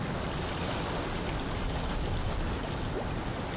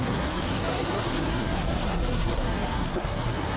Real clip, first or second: first